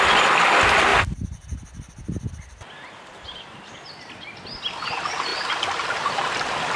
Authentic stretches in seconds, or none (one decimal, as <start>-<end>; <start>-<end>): 0.0-6.8